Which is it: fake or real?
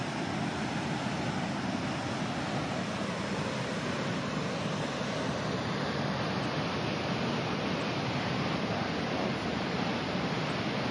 real